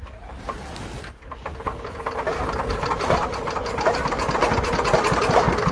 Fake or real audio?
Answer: real